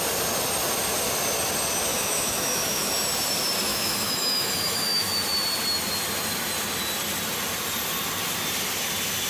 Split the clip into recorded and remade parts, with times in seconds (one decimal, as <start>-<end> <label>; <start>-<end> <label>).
0.0-1.9 recorded; 1.9-2.9 remade; 2.9-3.7 recorded; 3.7-5.1 remade; 5.1-9.3 recorded